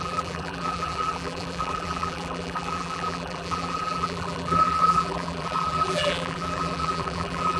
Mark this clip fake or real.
fake